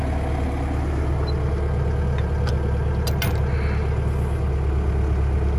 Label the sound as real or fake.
real